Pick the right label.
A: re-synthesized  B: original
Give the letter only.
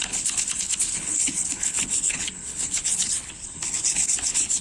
A